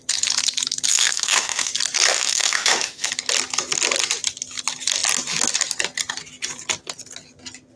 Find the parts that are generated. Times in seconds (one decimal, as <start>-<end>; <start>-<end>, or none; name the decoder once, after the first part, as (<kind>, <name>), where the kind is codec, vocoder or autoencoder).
0.9-1.7 (autoencoder, DAC-VAE); 2.1-3.1